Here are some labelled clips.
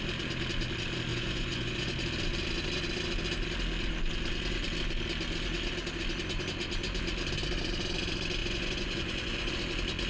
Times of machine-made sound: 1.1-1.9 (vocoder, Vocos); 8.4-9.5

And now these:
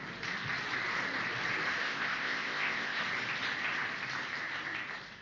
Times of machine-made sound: 1.8-3.0 (codec, ZipCodec)